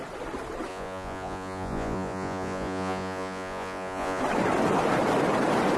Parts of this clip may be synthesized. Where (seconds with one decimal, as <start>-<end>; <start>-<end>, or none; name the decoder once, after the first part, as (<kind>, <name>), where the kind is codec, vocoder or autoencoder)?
0.7-4.2 (vocoder, Vocos)